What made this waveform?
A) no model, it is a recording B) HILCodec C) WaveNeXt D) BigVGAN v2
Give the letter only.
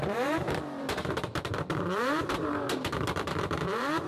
D